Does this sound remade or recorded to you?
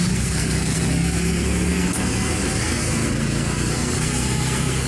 remade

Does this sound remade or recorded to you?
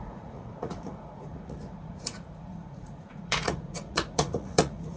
remade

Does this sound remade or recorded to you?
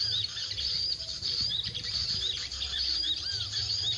remade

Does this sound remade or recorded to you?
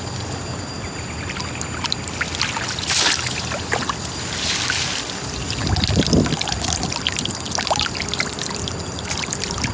recorded